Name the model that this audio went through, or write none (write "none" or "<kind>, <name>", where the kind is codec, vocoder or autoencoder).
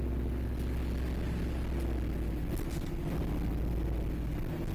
none